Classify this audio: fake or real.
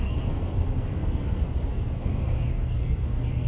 fake